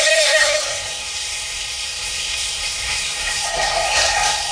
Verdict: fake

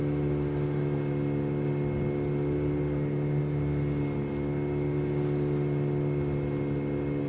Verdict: real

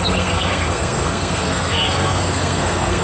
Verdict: fake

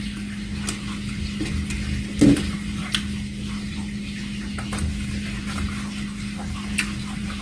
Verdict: real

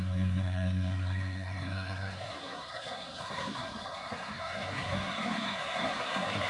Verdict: fake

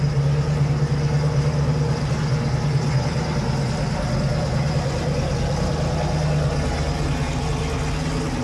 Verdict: real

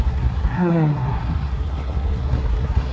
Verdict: fake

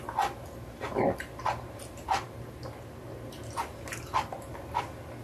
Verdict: real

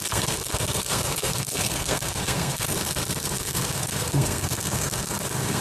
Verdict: fake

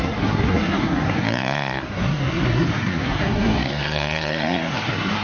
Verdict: fake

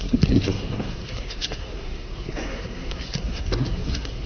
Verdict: fake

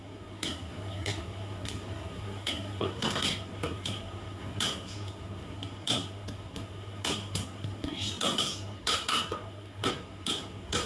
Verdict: fake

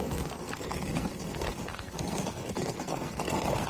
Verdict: fake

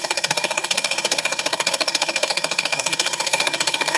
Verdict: fake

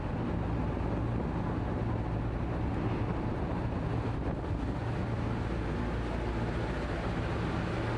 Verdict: real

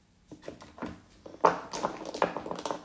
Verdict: real